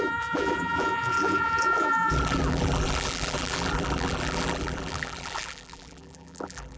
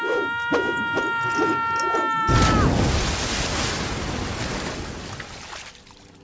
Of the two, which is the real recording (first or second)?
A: second